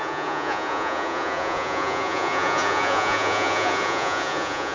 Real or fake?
fake